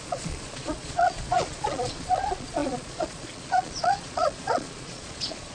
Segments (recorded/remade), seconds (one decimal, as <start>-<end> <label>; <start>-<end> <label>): 0.0-5.5 remade